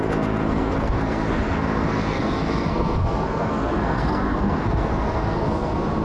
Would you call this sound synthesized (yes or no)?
yes